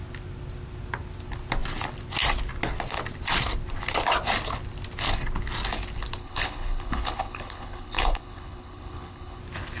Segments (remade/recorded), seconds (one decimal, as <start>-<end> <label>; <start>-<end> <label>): 0.0-6.2 recorded; 6.2-9.4 remade; 9.4-9.8 recorded